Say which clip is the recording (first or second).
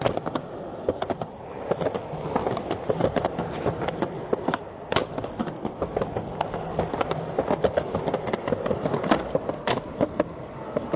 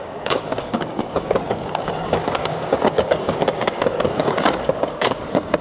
first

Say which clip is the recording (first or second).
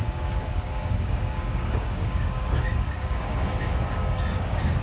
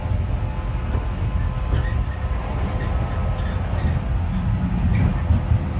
second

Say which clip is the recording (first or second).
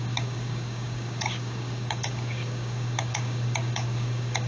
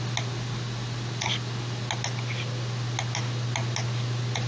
second